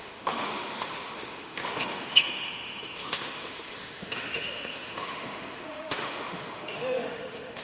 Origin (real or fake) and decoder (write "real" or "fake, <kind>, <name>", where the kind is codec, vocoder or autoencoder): fake, autoencoder, DAC-VAE